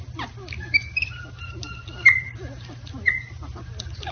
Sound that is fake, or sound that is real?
real